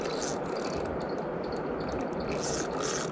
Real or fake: real